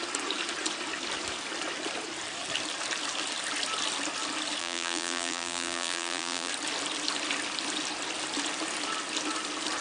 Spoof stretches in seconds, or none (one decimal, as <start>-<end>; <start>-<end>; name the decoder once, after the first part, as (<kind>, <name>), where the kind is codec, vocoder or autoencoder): 4.6-6.5 (vocoder, BigVGAN v2)